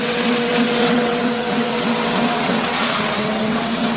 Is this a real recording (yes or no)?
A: no